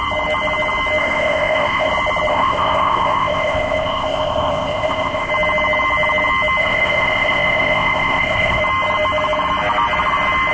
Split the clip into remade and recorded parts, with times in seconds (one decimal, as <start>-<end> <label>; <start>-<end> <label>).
0.0-1.0 recorded; 1.0-1.9 remade; 1.9-2.3 recorded; 2.3-5.3 remade; 5.3-6.6 recorded; 6.6-8.6 remade; 8.6-10.5 recorded